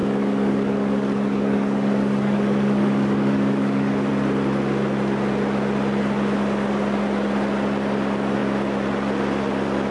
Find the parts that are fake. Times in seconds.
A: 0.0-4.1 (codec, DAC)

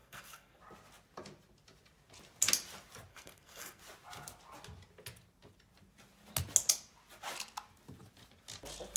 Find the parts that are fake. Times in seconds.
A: 0.0-0.6 (codec, SNAC); 3.1-3.8